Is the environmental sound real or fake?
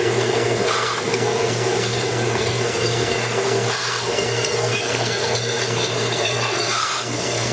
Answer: fake